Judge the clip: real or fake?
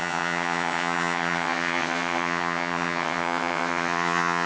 fake